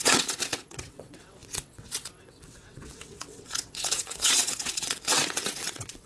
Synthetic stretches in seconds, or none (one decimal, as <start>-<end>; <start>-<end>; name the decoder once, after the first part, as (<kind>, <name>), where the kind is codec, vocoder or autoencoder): 0.0-6.1 (vocoder, WaveNeXt)